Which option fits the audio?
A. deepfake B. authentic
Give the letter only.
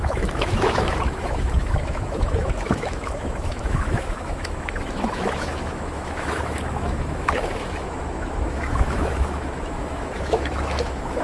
A